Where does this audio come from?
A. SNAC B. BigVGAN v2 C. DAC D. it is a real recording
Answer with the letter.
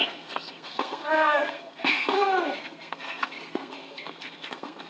A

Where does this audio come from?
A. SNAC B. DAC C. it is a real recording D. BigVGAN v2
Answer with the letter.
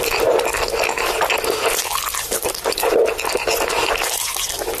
C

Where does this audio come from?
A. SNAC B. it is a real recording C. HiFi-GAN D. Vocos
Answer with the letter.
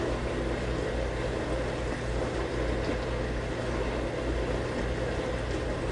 B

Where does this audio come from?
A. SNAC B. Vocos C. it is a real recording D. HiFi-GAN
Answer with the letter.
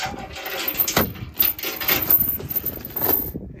C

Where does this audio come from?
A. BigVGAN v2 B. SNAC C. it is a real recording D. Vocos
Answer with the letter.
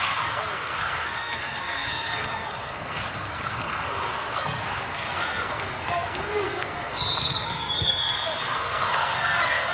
B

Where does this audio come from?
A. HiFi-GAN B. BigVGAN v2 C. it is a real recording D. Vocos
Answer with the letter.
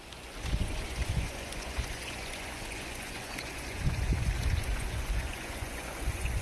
D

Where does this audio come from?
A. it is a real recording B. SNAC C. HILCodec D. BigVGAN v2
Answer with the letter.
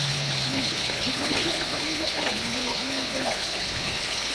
C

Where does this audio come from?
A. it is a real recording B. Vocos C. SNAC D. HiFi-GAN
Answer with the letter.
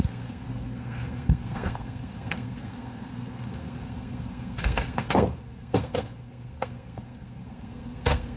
C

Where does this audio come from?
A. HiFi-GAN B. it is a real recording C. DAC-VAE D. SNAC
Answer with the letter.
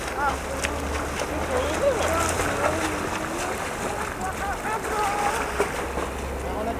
B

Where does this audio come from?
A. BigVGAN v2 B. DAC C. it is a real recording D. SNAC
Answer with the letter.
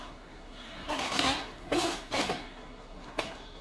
D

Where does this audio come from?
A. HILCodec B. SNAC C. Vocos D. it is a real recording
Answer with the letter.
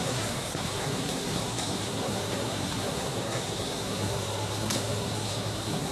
B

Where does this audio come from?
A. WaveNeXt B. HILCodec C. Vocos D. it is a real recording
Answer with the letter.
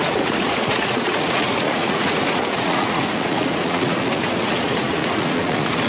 C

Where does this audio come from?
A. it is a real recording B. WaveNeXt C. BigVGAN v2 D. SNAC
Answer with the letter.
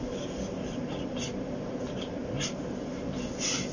A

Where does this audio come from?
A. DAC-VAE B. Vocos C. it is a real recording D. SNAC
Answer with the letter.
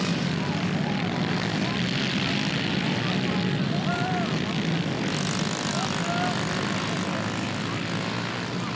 C